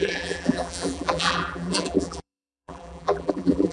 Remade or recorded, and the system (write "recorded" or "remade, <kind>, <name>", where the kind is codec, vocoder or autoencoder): remade, vocoder, BigVGAN v2